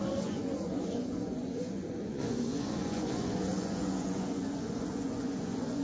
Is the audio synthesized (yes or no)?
yes